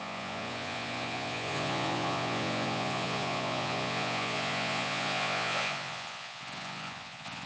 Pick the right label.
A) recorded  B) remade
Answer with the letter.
B